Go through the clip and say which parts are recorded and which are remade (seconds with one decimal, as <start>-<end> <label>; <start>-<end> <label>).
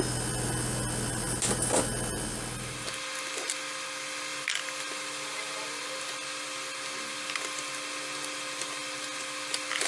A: 0.0-4.3 recorded; 4.3-5.8 remade; 5.8-9.9 recorded